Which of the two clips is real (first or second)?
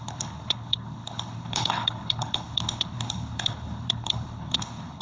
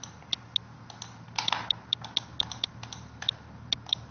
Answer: second